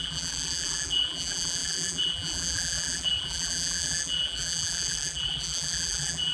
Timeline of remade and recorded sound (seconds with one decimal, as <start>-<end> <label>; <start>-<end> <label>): 0.0-6.3 remade